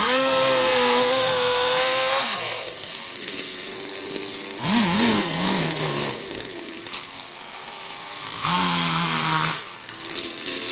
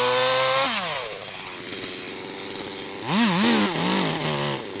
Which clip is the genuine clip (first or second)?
second